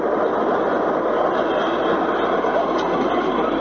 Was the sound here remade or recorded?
recorded